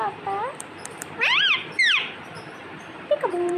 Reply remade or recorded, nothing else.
remade